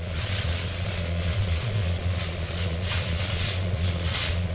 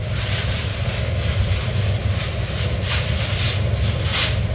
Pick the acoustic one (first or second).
second